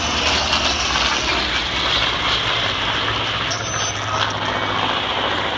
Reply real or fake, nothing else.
real